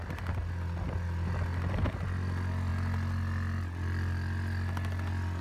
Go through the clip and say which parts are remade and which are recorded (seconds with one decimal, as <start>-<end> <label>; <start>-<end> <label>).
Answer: 0.0-5.4 recorded